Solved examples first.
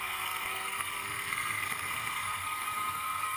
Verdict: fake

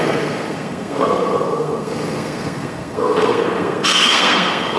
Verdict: fake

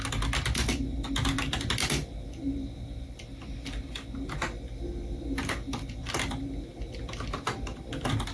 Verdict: real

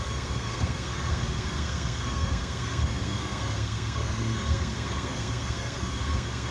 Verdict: fake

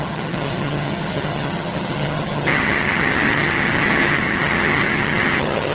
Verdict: fake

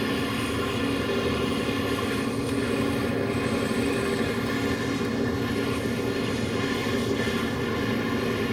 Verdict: real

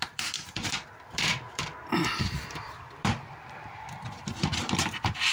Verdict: fake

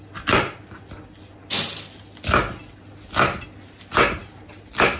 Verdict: real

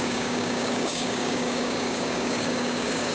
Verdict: fake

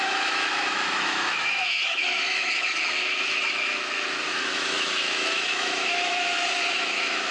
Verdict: fake